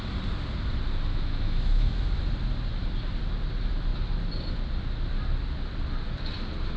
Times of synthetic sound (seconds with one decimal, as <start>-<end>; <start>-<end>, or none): 1.1-2.2